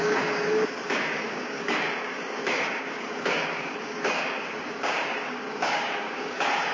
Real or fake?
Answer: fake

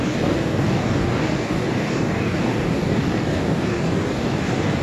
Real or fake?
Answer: fake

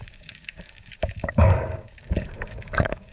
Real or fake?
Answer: fake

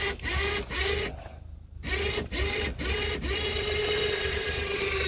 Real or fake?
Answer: real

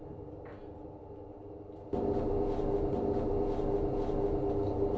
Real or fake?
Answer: real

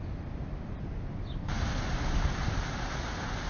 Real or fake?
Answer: real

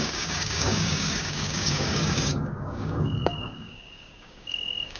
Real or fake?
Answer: fake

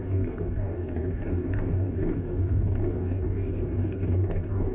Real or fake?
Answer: fake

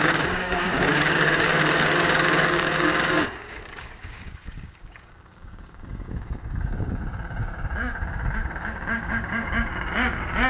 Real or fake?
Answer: fake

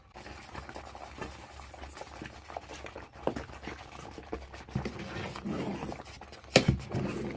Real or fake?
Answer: real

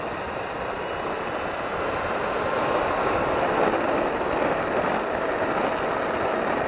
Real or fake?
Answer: real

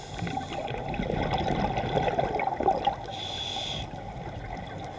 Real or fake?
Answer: real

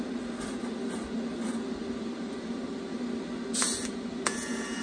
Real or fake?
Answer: real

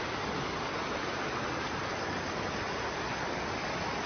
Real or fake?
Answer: real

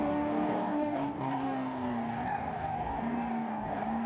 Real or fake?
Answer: fake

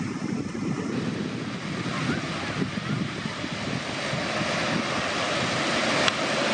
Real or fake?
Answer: real